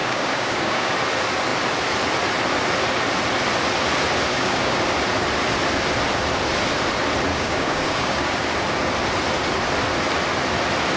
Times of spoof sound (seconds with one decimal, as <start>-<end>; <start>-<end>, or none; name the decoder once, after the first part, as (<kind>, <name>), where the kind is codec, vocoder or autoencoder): 0.0-0.9 (codec, DAC); 4.3-4.8; 7.3-8.4